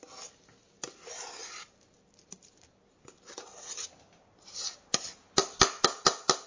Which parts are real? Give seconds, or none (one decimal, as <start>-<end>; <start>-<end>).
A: 0.0-1.4; 5.3-6.5